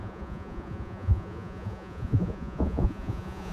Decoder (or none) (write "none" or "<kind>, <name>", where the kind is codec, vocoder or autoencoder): vocoder, Vocos